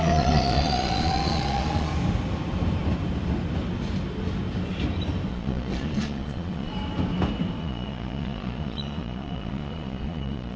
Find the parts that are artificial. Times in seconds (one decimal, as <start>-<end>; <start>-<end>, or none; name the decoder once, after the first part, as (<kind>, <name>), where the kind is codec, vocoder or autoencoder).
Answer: 0.0-1.9 (vocoder, Vocos); 5.3-6.7; 7.6-10.6